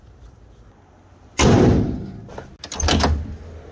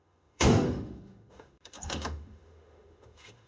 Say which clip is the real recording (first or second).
first